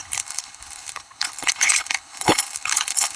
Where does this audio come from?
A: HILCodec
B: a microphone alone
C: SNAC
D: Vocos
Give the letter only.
A